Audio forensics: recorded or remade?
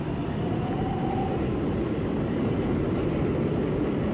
recorded